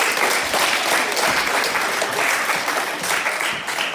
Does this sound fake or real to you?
fake